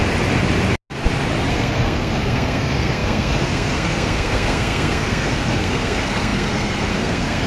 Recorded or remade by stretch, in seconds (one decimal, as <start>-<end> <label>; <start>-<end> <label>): 0.0-1.5 recorded; 1.5-7.5 remade